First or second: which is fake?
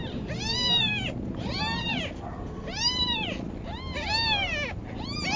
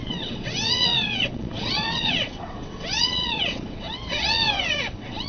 second